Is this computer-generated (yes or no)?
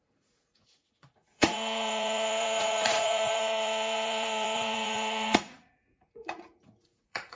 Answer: yes